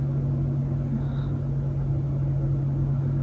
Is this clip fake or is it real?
real